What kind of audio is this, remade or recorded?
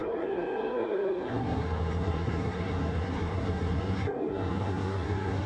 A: remade